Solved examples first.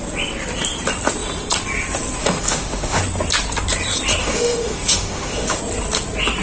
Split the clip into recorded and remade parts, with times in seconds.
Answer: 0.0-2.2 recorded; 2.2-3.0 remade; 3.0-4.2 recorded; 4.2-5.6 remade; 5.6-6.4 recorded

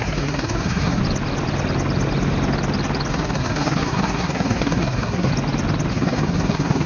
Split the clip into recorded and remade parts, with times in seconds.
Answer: 0.0-1.0 remade; 1.0-3.1 recorded; 3.1-5.3 remade; 5.3-5.9 recorded; 5.9-6.9 remade

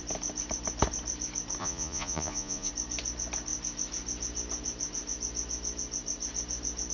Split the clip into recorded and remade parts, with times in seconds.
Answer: 0.0-1.6 recorded; 1.6-2.7 remade; 2.7-6.9 recorded

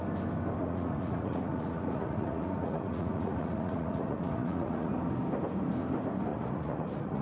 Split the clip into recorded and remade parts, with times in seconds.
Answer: 0.0-0.6 recorded; 0.6-4.9 remade; 4.9-6.3 recorded; 6.3-7.2 remade

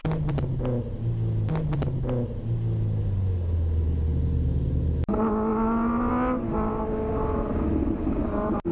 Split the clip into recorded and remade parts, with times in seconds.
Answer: 0.0-8.7 recorded

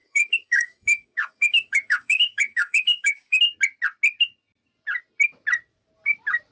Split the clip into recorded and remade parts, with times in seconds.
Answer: 0.0-3.4 remade; 3.4-6.5 recorded